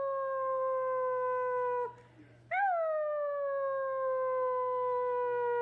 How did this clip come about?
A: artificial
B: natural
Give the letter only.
B